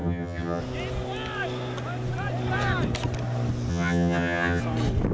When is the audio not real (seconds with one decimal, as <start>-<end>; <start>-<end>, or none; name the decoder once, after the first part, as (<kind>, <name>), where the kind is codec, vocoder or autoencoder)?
0.0-0.6 (vocoder, HiFi-GAN); 3.7-4.6